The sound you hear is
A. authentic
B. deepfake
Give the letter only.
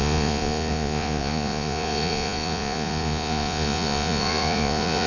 B